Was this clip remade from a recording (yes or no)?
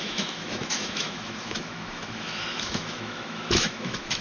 yes